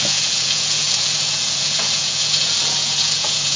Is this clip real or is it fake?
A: fake